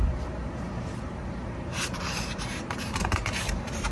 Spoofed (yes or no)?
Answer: yes